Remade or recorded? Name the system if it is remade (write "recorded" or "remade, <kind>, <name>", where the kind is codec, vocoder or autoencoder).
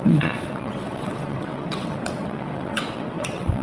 remade, vocoder, WaveNeXt